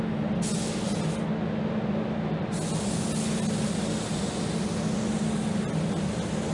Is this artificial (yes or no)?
no